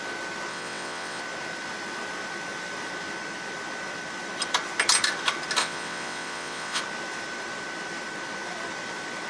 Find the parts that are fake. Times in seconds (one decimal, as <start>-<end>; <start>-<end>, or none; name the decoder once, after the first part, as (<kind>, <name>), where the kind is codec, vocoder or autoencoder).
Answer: 0.5-1.2 (vocoder, WaveNeXt); 5.6-6.8